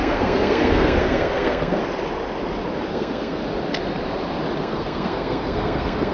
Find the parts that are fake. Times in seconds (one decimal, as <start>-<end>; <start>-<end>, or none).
0.0-1.8; 2.9-3.4; 4.6-6.1

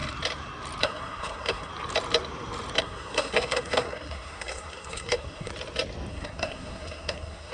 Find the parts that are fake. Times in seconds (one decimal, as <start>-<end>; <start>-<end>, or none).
0.8-1.7; 2.8-5.5; 6.1-7.5

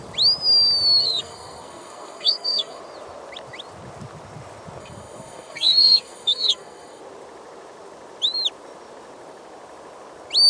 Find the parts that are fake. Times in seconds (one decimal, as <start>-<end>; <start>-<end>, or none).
1.0-2.8; 4.8-7.0